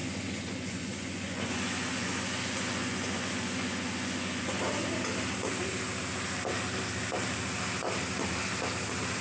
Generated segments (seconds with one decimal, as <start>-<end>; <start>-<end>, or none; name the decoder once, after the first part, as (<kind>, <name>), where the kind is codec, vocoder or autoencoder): 0.0-4.6 (vocoder, Vocos)